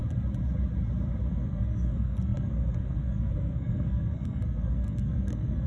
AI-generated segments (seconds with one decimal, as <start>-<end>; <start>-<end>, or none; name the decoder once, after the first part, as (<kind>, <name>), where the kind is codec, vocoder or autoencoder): 1.3-5.7 (codec, SNAC)